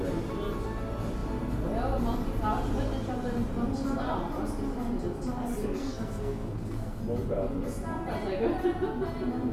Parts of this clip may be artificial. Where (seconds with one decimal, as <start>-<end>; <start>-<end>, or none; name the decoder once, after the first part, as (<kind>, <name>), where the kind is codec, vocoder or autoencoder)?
5.8-7.0 (codec, SNAC)